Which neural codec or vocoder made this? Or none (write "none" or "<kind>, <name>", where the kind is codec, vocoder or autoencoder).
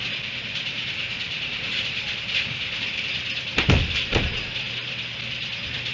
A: vocoder, BigVGAN v2